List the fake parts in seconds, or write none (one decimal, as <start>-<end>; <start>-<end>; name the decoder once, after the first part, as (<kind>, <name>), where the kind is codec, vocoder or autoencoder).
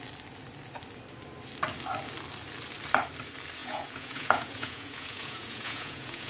3.6-6.3 (vocoder, Vocos)